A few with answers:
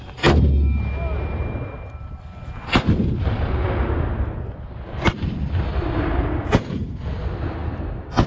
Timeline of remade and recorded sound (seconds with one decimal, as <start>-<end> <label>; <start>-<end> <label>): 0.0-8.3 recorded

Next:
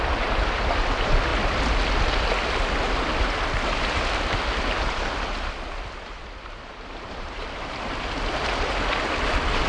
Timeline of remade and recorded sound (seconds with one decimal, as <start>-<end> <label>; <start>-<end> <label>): 0.0-1.3 remade; 1.3-3.6 recorded; 3.6-9.7 remade

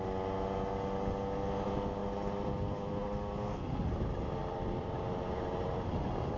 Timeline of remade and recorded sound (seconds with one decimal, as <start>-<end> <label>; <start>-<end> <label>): 0.0-4.4 recorded; 4.4-5.9 remade; 5.9-6.4 recorded

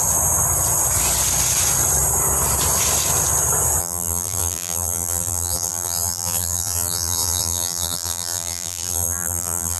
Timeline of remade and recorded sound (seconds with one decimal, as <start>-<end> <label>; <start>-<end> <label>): 0.0-3.8 recorded; 3.8-9.8 remade

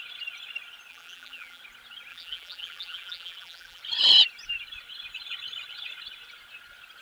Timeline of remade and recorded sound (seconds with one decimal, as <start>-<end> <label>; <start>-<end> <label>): 0.0-0.9 recorded; 0.9-1.6 remade; 1.6-2.1 recorded; 2.1-3.8 remade; 3.8-7.0 recorded

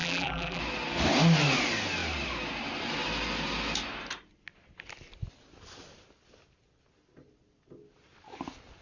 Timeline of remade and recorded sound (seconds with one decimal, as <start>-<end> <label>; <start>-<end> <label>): 0.0-0.6 remade; 0.6-8.8 recorded

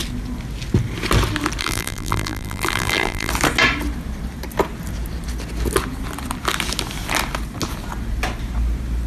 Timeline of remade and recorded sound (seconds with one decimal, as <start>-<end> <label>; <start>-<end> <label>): 0.0-1.6 recorded; 1.6-3.3 remade; 3.3-9.1 recorded